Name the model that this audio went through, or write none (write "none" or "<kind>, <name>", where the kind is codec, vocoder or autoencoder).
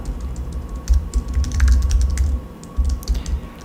none